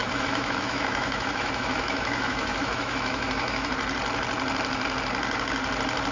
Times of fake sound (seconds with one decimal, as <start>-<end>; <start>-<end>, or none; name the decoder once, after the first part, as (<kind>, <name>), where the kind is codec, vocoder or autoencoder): 0.0-3.7 (autoencoder, DAC-VAE)